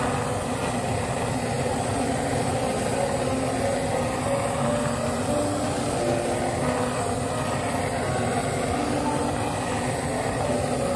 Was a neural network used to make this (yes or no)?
no